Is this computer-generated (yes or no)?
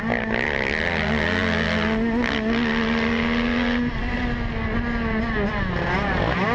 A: no